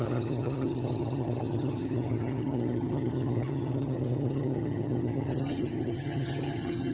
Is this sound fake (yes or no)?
yes